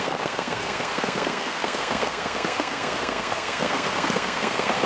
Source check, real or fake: fake